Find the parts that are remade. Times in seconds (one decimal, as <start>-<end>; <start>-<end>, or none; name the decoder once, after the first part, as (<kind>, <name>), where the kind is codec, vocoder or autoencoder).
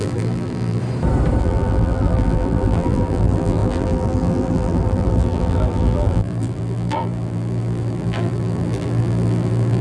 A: 0.0-0.8 (vocoder, BigVGAN v2); 1.4-9.8